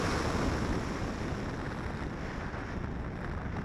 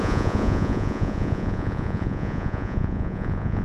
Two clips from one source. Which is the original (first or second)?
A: first